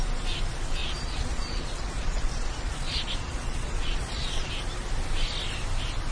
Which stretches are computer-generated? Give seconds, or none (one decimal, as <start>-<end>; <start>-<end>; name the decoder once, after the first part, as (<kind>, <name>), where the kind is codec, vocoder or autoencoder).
0.8-4.5 (vocoder, Vocos)